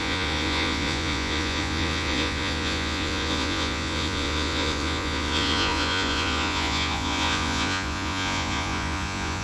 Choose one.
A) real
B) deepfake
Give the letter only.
B